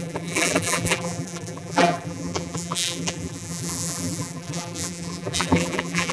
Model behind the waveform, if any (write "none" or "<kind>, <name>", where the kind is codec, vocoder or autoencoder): vocoder, BigVGAN v2